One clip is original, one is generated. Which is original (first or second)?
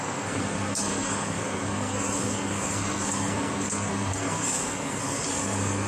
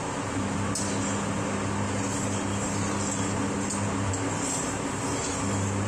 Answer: second